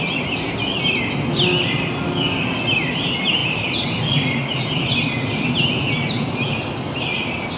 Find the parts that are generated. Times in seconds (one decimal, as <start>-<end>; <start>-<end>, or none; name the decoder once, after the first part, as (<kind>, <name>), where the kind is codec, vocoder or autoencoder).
none